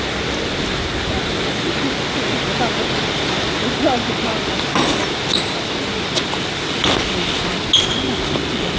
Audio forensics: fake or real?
real